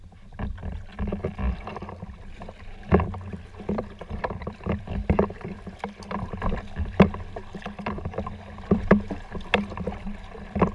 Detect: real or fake fake